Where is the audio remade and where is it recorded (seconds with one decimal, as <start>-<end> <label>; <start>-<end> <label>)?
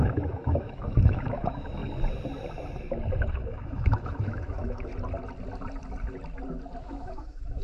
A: 0.0-1.8 remade; 1.8-3.3 recorded; 3.3-4.9 remade; 4.9-6.8 recorded; 6.8-7.6 remade